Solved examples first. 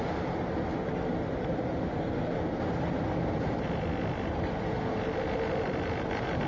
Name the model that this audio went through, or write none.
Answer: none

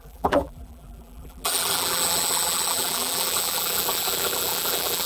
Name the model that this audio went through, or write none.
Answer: vocoder, BigVGAN v2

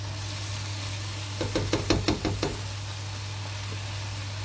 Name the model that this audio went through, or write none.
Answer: none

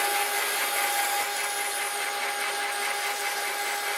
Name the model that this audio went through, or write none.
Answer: none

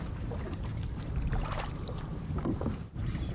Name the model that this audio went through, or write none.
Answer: vocoder, BigVGAN v2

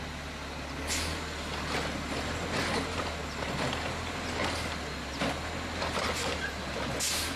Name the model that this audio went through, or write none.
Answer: none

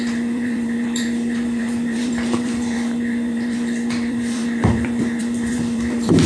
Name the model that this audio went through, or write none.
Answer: vocoder, BigVGAN v2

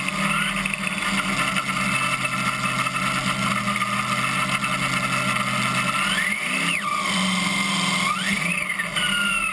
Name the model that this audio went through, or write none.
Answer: none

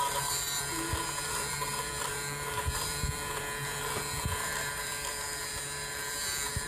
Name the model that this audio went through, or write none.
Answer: vocoder, BigVGAN v2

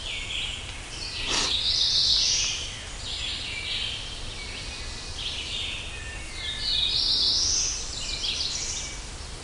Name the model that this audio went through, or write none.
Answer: none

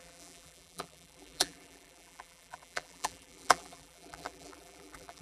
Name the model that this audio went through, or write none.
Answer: vocoder, BigVGAN v2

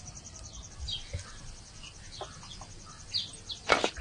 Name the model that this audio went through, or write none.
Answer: none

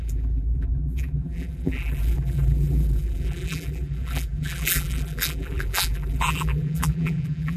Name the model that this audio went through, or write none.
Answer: vocoder, BigVGAN v2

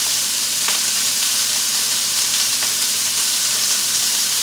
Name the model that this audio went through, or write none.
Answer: vocoder, BigVGAN v2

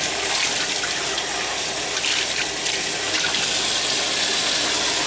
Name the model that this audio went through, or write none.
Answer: vocoder, BigVGAN v2